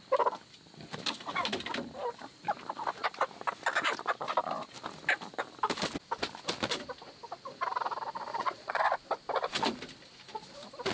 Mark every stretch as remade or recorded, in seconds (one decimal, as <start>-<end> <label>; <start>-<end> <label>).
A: 0.0-8.3 recorded; 8.3-8.8 remade; 8.8-10.9 recorded